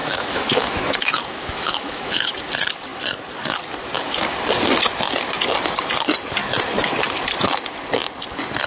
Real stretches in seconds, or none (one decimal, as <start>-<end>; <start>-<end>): 2.4-8.7